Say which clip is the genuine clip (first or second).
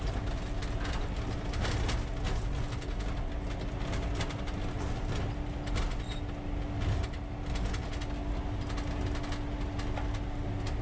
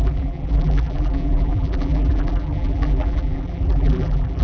first